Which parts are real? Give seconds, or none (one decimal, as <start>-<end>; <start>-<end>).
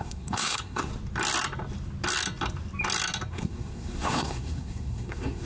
0.9-3.3